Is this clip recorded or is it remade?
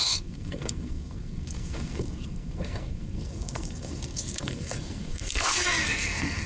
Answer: remade